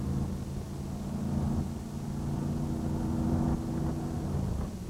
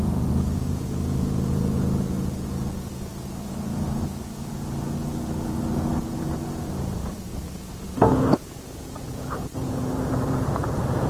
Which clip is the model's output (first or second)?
second